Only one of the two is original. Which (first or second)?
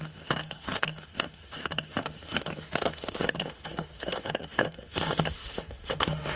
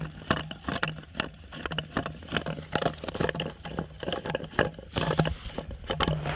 second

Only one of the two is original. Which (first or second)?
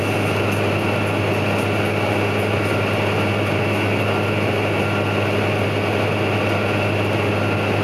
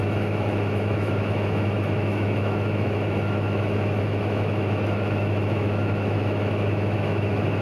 first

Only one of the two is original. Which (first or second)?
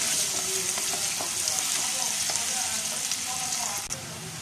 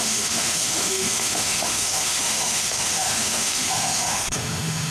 first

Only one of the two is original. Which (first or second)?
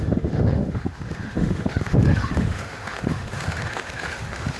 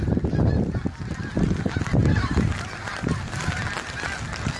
second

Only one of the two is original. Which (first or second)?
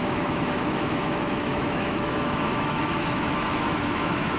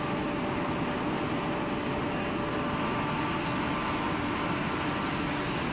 second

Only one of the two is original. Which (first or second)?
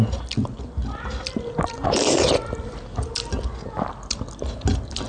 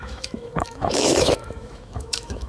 first